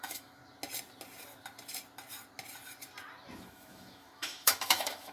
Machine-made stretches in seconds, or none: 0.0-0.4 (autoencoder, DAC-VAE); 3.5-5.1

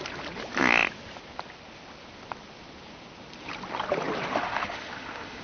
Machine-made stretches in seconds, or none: 4.3-5.4 (autoencoder, DAC-VAE)

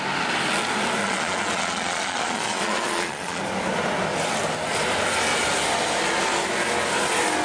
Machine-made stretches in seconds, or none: 1.0-3.4 (vocoder, Vocos)

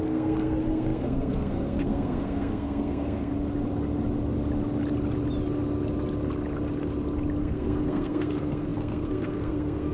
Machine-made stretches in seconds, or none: 0.0-3.3 (codec, SNAC); 7.4-9.9

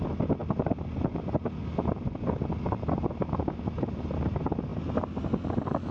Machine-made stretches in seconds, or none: none